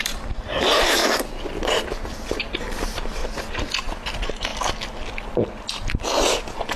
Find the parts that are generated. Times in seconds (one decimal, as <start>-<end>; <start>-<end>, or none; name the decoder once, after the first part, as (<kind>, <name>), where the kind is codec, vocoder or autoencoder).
0.0-1.0 (vocoder, BigVGAN v2); 2.3-3.2; 3.8-4.5